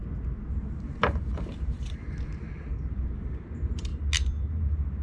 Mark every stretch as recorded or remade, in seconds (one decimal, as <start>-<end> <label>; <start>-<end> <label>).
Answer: 0.0-0.5 recorded; 0.5-2.0 remade; 2.0-2.7 recorded; 2.7-3.9 remade; 3.9-4.4 recorded; 4.4-5.0 remade